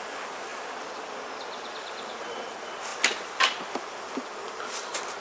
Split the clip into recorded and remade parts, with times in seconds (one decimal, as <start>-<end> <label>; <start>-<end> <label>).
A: 0.0-5.2 recorded